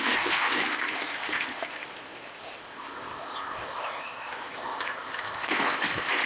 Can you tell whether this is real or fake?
fake